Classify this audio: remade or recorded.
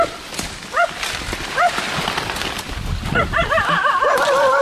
recorded